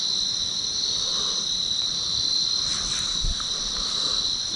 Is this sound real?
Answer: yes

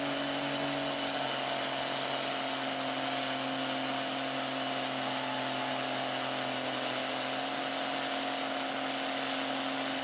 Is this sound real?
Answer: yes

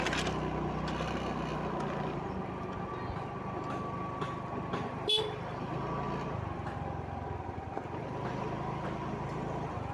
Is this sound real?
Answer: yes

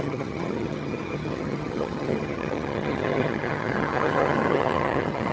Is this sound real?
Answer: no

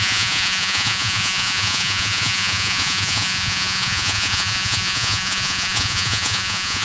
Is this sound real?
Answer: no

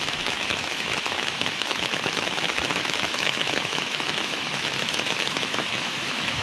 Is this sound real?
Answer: no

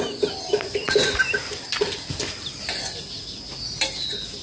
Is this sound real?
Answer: yes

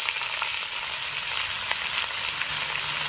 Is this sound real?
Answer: yes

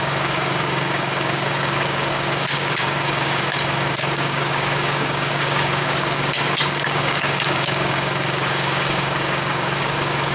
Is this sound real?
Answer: no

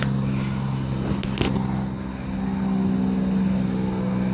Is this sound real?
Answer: yes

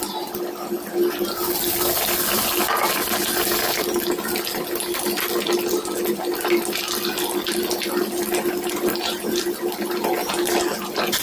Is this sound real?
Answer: yes